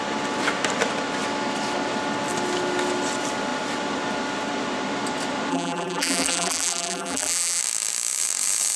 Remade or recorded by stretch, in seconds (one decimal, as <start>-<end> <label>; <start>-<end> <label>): 0.0-5.5 recorded; 5.5-7.6 remade; 7.6-8.8 recorded